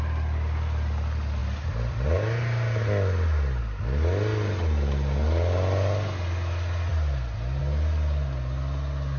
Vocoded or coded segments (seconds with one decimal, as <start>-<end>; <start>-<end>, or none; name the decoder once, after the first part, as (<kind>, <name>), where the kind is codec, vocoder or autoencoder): none